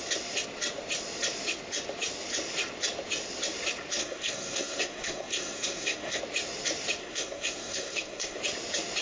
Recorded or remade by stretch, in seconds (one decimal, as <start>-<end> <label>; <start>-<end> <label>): 0.0-4.0 recorded; 4.0-6.2 remade; 6.2-7.0 recorded; 7.0-8.4 remade; 8.4-9.0 recorded